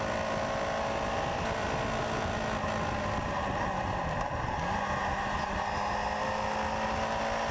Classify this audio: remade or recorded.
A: recorded